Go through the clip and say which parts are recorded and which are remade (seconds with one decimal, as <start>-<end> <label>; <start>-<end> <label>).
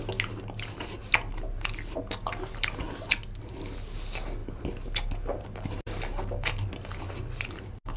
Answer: 0.0-8.0 recorded